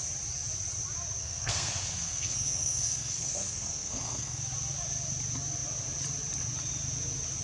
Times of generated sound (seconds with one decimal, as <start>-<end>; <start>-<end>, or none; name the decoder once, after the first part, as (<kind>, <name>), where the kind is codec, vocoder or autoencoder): 1.2-4.4 (codec, SNAC)